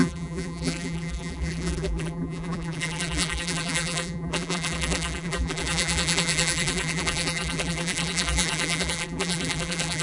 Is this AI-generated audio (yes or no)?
yes